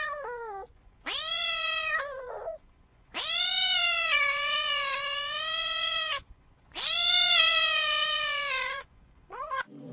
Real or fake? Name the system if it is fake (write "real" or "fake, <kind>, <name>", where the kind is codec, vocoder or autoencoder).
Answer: fake, vocoder, Vocos